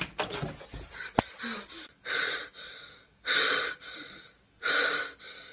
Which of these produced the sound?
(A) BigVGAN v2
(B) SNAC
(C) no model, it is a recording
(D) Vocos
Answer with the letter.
C